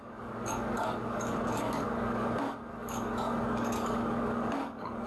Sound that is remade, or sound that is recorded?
remade